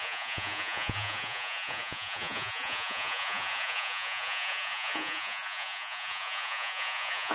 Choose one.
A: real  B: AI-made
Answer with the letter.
B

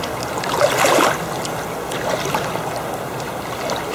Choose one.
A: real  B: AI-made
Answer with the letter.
A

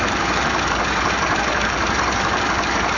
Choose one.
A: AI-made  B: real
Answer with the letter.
A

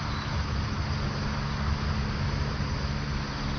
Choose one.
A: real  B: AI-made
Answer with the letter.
A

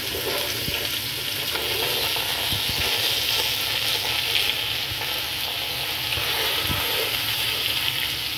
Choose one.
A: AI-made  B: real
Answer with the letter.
B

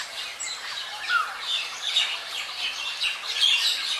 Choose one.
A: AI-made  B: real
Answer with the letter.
A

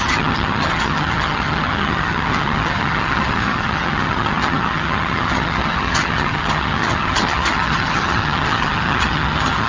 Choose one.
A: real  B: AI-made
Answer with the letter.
B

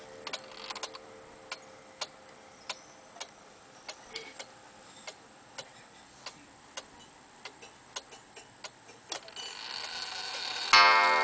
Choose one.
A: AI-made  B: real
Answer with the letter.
B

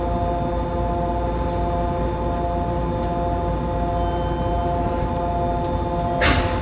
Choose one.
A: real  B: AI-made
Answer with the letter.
A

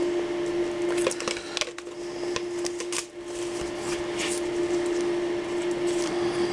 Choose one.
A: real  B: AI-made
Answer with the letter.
A